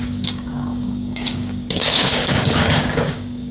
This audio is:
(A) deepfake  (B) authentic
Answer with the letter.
A